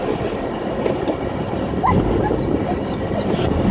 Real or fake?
fake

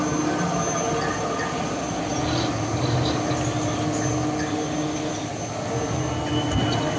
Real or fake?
real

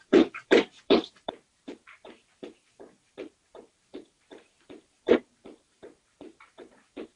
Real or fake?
fake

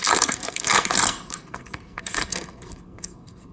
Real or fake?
fake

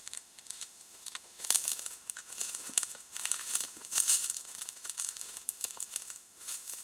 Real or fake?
fake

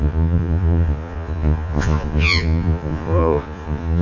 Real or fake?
fake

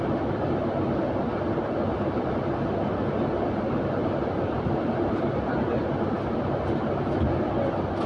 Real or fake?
real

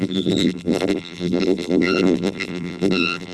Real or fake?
fake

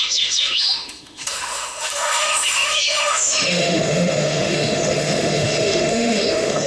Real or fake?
fake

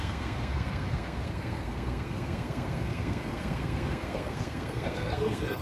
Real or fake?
fake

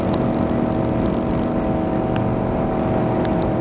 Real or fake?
real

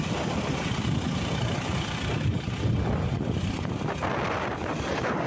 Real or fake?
real